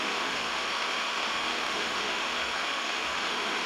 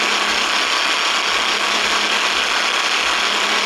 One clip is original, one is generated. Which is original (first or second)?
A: second